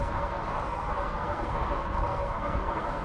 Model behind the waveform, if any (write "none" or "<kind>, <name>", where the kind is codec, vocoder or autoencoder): codec, SNAC